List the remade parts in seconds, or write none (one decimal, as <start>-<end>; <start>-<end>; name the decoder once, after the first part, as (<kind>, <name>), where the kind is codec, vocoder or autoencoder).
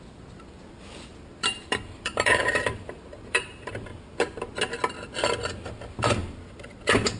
1.1-3.7 (vocoder, BigVGAN v2)